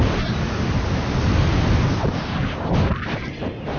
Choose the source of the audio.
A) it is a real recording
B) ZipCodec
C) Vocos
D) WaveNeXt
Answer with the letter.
A